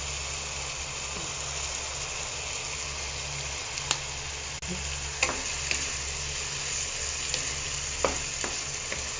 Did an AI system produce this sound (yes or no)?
no